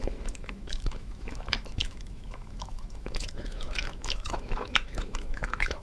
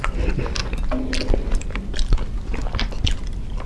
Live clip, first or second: second